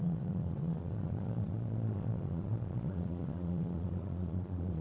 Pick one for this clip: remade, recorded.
remade